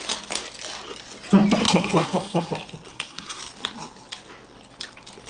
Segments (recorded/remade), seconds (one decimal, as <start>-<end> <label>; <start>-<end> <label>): 0.0-1.6 recorded; 1.6-2.5 remade; 2.5-2.9 recorded; 2.9-3.4 remade; 3.4-5.3 recorded